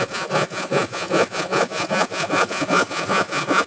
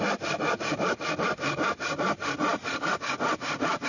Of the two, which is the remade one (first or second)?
first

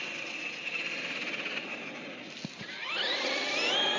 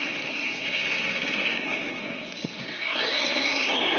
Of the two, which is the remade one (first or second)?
second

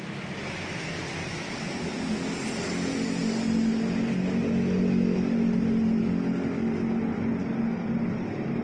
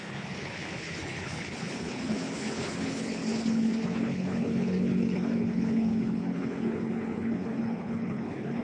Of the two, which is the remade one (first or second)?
second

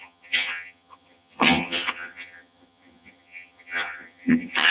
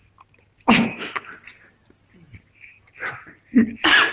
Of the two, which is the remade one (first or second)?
first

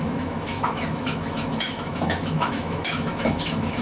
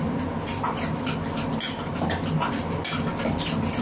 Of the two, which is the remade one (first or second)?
first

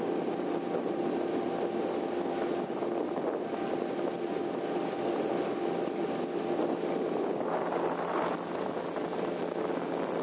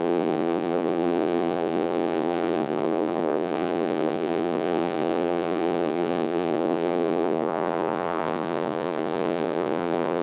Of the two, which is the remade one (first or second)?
second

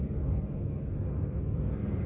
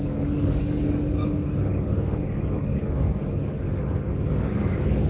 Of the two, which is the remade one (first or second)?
second